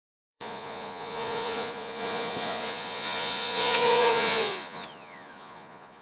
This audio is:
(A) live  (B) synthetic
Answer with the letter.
B